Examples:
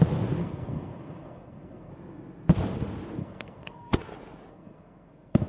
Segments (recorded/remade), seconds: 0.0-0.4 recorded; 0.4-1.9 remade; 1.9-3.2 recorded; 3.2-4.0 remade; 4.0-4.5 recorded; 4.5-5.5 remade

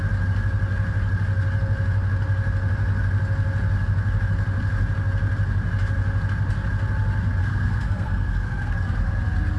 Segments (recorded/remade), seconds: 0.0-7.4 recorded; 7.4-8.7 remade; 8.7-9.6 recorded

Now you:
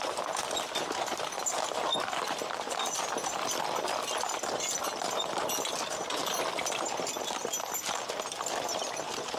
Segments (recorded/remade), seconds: 0.0-9.4 recorded

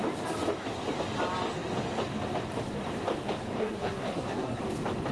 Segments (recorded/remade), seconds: 0.0-3.6 recorded; 3.6-4.6 remade; 4.6-5.1 recorded

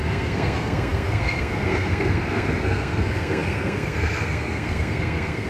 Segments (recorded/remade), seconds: 0.0-5.5 remade